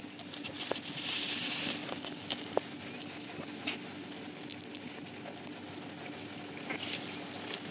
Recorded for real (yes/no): yes